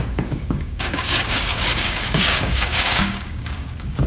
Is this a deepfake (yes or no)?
yes